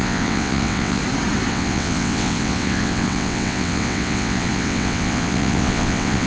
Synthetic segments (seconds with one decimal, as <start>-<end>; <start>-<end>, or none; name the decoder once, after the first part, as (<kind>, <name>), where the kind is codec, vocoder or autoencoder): 0.0-1.0 (vocoder, WaveNeXt); 1.5-6.3